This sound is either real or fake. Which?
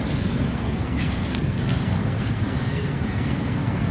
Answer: fake